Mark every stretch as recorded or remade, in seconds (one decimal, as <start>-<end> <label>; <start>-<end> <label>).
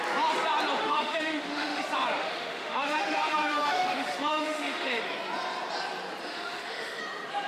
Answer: 0.0-0.8 recorded; 0.8-1.8 remade; 1.8-2.2 recorded; 2.2-5.0 remade; 5.0-6.2 recorded; 6.2-7.0 remade; 7.0-7.5 recorded